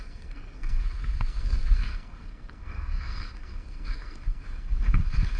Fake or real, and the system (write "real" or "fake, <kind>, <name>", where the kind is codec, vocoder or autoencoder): fake, codec, SNAC